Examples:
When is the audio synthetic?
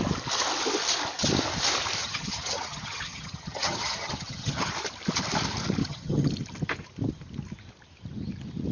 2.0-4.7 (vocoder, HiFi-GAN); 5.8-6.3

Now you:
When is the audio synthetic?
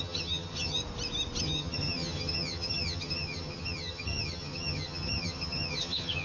0.0-0.8 (vocoder, HiFi-GAN); 1.4-6.2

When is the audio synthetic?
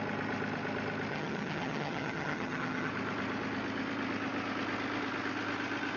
1.1-2.9 (vocoder, HiFi-GAN)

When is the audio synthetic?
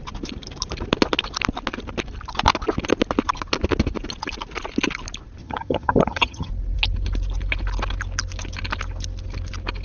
5.4-6.5 (vocoder, HiFi-GAN)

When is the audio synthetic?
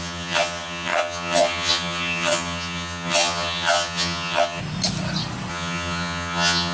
0.0-4.6 (vocoder, HiFi-GAN); 5.5-6.7